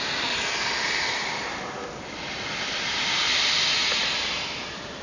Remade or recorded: recorded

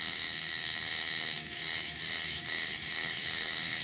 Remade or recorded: remade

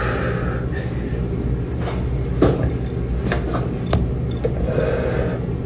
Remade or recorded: recorded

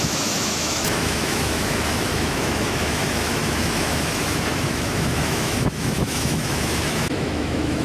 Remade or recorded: remade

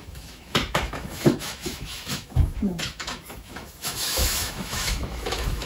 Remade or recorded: remade